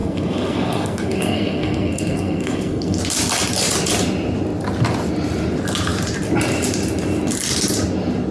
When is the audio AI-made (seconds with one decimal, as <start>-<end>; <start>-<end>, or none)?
0.0-3.0